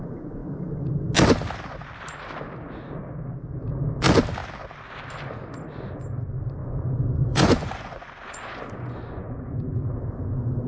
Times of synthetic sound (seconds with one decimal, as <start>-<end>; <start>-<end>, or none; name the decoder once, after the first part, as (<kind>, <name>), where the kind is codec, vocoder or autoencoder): 6.6-9.8 (vocoder, Vocos)